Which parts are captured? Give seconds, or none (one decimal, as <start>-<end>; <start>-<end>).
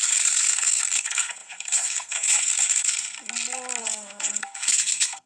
3.2-3.8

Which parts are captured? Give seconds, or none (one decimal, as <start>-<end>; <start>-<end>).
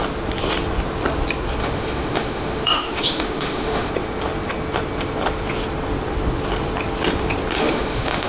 0.0-1.6; 3.9-7.6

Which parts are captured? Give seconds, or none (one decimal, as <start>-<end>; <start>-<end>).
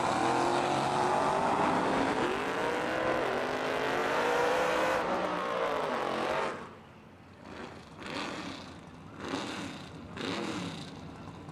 0.0-4.0; 5.7-11.5